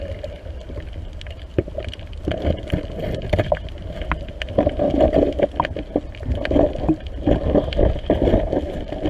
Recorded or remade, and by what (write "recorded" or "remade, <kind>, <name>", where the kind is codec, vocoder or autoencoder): recorded